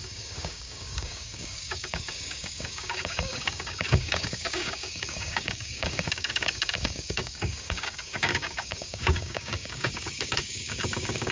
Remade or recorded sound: remade